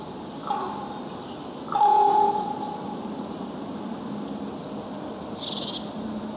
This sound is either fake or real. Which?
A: real